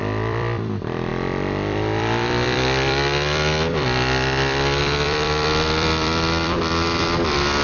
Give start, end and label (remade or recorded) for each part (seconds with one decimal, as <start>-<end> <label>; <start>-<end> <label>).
0.0-7.6 remade